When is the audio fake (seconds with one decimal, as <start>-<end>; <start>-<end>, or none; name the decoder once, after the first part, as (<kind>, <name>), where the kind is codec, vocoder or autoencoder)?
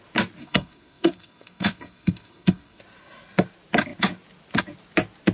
0.4-2.8 (codec, SNAC)